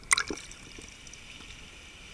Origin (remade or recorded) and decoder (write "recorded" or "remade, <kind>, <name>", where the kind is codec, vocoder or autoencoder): recorded